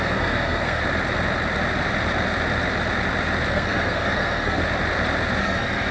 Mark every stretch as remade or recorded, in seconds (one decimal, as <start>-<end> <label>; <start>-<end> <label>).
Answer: 0.0-0.8 remade; 0.8-3.5 recorded; 3.5-4.6 remade; 4.6-5.4 recorded; 5.4-5.9 remade